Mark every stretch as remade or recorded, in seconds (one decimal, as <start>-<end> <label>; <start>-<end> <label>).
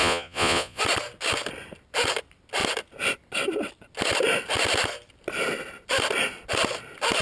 0.0-0.8 remade; 0.8-7.2 recorded